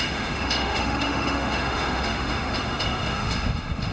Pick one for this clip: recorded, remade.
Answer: remade